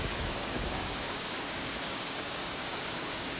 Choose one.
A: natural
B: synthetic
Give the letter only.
B